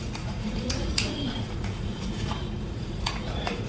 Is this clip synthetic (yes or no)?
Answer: yes